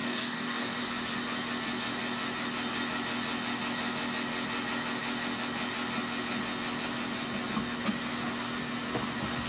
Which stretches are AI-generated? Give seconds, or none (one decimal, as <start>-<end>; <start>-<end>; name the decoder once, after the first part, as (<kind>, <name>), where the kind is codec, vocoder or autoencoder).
0.0-0.8 (codec, DAC)

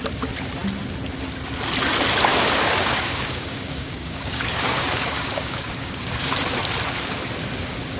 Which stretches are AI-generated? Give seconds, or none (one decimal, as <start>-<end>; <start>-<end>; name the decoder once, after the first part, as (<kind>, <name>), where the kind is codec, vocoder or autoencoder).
2.3-6.3 (codec, DAC)

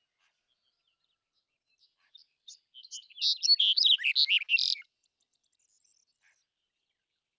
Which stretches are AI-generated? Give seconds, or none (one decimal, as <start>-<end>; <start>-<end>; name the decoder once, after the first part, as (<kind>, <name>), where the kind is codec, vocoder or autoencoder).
none